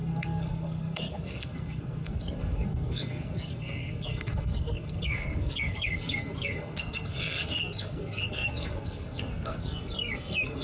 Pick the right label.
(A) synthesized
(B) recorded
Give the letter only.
A